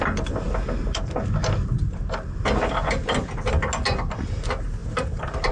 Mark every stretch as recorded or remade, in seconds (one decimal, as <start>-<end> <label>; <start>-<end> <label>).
0.0-5.5 recorded